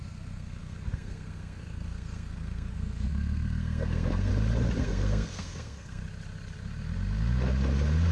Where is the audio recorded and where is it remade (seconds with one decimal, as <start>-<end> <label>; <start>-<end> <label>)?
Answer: 0.0-4.3 remade; 4.3-4.8 recorded; 4.8-6.0 remade; 6.0-8.1 recorded